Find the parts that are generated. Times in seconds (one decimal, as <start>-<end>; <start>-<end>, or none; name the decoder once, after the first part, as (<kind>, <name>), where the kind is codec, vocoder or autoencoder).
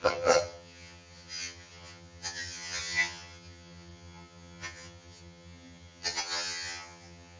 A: 0.0-7.4 (vocoder, HiFi-GAN)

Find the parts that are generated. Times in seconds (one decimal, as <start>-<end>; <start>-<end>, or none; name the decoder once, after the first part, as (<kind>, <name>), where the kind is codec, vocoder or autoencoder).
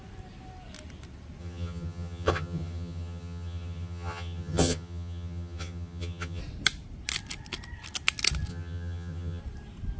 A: 1.4-6.4 (vocoder, HiFi-GAN); 8.5-9.4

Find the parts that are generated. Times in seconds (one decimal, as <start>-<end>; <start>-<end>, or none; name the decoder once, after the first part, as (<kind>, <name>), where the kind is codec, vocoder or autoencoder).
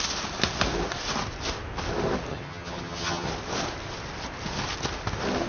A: 2.3-3.3 (vocoder, HiFi-GAN)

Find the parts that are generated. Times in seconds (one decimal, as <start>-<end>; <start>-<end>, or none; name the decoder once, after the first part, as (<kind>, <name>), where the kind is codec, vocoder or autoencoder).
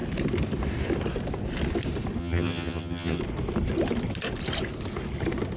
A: 2.2-3.2 (vocoder, HiFi-GAN)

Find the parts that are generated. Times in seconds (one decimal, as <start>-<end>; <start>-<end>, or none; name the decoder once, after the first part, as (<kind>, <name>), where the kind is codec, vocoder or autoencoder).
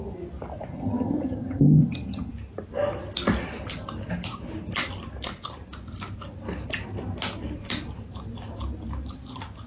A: 0.7-2.3 (vocoder, HiFi-GAN)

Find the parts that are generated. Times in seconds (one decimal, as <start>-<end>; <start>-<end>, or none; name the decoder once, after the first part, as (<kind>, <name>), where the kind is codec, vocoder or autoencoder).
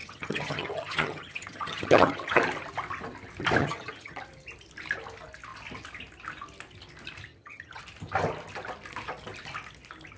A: 0.0-2.4 (vocoder, HiFi-GAN); 3.6-4.2; 7.3-7.8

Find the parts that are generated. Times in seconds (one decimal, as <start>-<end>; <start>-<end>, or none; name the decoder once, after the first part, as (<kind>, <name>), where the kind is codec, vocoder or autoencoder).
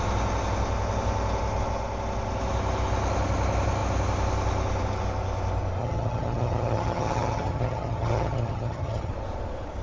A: 5.8-9.1 (vocoder, HiFi-GAN)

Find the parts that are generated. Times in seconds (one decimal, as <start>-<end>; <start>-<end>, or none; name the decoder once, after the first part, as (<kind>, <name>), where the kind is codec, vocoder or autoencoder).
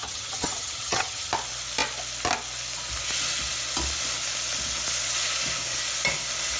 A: 0.0-1.3 (vocoder, HiFi-GAN)